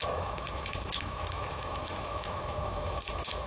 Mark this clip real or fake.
fake